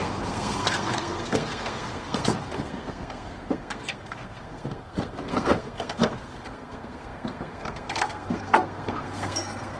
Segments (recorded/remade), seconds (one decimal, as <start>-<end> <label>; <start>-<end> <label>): 0.0-9.8 remade